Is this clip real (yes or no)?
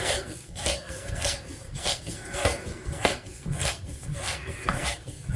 no